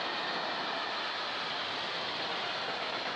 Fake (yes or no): no